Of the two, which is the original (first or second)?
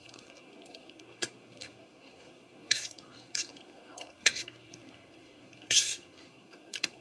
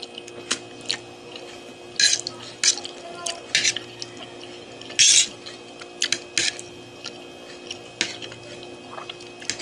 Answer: second